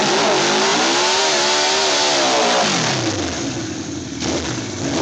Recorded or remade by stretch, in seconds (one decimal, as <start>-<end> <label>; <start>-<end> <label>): 0.0-5.0 recorded